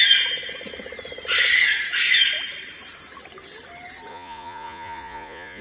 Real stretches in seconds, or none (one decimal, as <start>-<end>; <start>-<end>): 0.0-4.1